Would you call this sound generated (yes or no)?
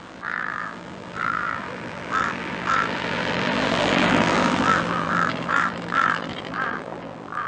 yes